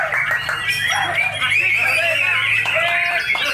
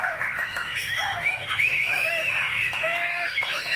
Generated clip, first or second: second